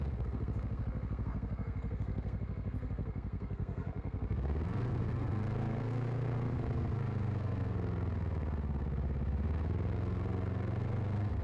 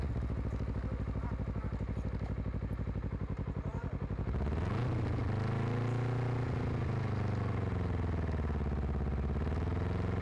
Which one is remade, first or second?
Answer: first